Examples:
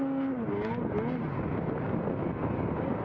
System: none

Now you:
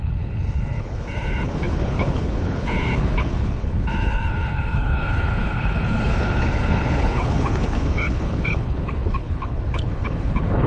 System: codec, HILCodec